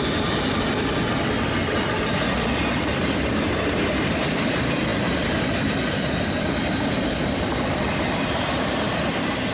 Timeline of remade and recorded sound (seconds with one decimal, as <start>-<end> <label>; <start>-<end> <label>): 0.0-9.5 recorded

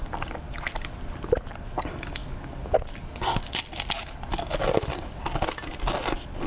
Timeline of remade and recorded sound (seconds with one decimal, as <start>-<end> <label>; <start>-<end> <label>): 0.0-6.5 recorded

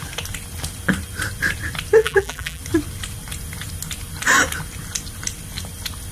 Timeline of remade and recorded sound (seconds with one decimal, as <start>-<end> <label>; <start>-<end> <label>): 0.0-2.0 recorded; 2.0-2.6 remade; 2.6-6.1 recorded

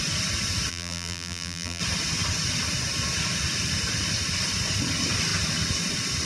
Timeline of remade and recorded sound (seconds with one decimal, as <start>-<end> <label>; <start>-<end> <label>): 0.0-0.7 recorded; 0.7-1.8 remade; 1.8-6.3 recorded